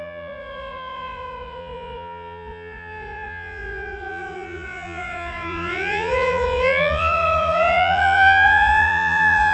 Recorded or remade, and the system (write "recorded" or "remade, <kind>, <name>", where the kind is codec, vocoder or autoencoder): remade, vocoder, Vocos